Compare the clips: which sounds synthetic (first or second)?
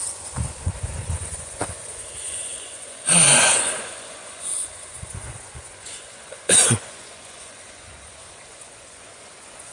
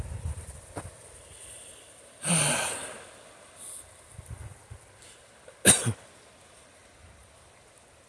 first